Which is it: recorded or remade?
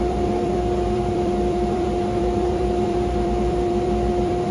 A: remade